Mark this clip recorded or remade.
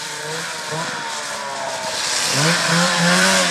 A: remade